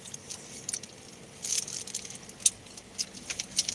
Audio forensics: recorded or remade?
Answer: recorded